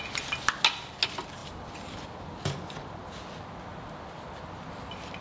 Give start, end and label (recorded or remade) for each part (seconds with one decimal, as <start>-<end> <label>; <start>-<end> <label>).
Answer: 0.0-5.2 recorded